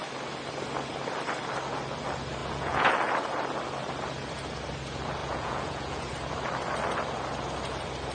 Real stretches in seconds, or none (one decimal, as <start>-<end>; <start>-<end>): 0.0-2.4; 2.9-5.2; 6.1-8.1